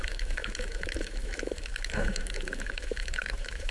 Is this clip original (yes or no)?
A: no